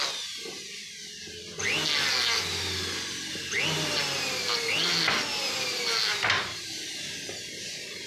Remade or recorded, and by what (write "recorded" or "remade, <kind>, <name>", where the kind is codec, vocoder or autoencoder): recorded